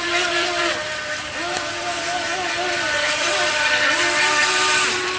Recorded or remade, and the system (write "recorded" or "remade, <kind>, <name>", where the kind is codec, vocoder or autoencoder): remade, vocoder, BigVGAN v2